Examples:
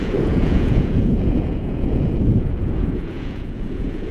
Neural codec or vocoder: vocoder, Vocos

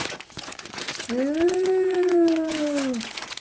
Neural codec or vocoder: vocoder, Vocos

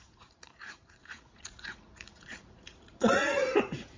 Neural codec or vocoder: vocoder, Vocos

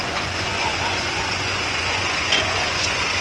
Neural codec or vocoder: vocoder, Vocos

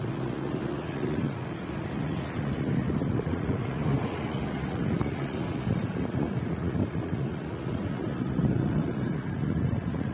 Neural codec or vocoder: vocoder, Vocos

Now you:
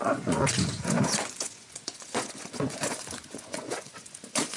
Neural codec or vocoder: vocoder, Vocos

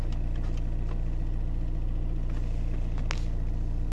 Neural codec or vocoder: none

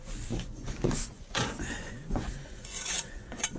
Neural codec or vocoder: vocoder, Vocos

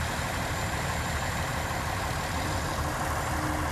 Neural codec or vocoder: none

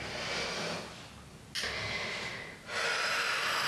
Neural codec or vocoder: none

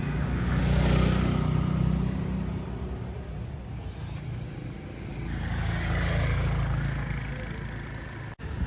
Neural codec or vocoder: none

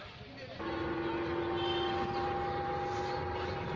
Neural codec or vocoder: none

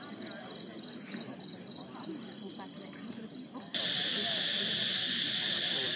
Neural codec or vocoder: none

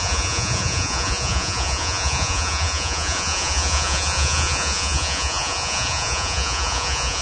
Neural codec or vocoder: vocoder, Vocos